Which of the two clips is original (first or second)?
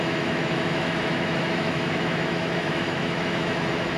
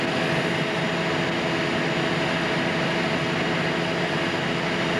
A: second